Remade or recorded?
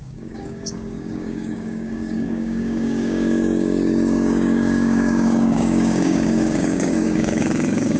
remade